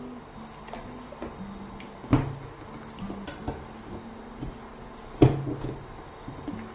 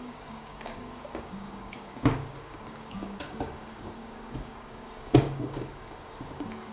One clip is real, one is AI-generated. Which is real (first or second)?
first